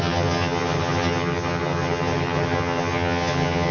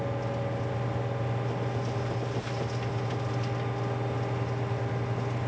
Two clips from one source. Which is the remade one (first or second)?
first